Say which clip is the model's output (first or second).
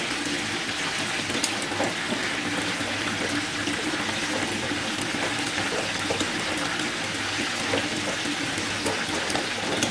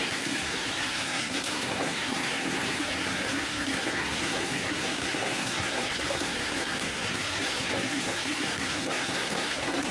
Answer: second